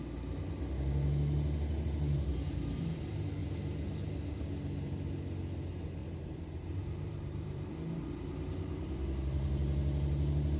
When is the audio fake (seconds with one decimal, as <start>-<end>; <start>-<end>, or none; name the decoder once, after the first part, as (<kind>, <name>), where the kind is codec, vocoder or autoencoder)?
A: 6.0-7.7 (vocoder, BigVGAN v2)